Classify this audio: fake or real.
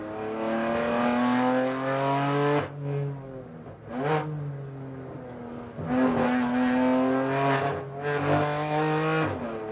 real